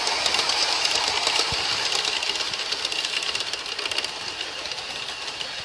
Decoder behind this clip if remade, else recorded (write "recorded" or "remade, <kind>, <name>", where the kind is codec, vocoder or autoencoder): recorded